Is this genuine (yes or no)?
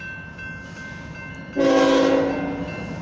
yes